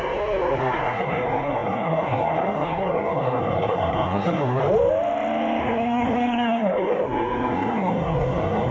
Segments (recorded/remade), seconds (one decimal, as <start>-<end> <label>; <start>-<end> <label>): 0.0-4.6 remade; 4.6-5.6 recorded; 5.6-8.7 remade